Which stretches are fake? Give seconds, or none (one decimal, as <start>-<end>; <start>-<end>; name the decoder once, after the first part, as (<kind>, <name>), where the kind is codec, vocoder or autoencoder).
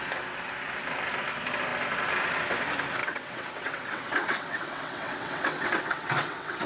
3.0-6.7 (vocoder, WaveNeXt)